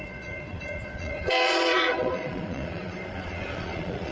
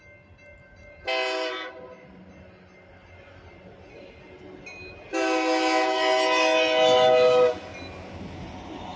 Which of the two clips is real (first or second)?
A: second